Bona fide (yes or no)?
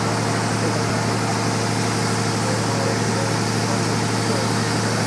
yes